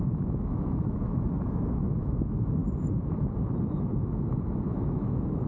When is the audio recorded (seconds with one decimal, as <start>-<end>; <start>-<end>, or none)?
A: 2.6-3.6